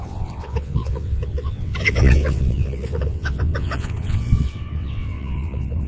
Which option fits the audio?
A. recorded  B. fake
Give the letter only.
B